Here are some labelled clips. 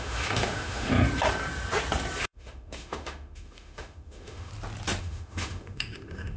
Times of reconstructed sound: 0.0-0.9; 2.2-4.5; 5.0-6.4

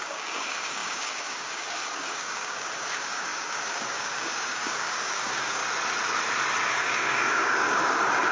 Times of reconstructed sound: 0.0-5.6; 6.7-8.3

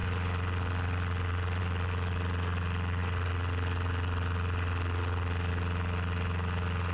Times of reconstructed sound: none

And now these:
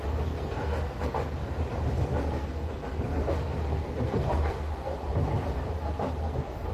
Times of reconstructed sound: 0.0-1.4; 2.0-4.9; 5.7-6.7